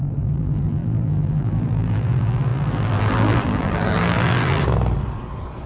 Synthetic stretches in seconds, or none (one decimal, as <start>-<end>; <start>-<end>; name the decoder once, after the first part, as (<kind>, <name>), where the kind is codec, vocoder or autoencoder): 0.0-4.6 (vocoder, BigVGAN v2)